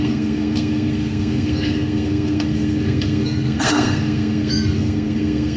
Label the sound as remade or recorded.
remade